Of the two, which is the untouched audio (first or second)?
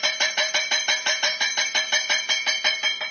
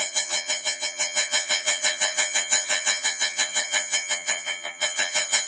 first